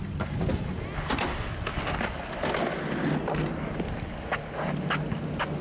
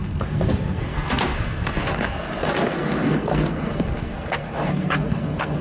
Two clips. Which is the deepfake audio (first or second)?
second